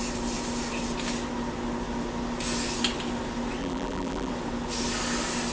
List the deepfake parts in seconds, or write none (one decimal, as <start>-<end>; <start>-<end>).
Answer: 3.6-4.3